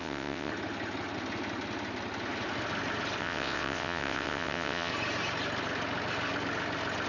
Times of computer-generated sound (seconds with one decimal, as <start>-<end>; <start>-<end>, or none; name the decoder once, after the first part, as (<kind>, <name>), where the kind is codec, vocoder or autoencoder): 0.0-0.5 (vocoder, WaveNeXt); 3.2-4.9